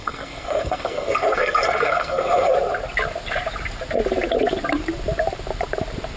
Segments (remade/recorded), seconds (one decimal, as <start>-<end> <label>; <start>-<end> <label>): 0.0-2.5 remade; 2.5-6.2 recorded